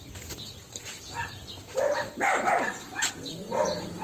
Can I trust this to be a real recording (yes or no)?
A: yes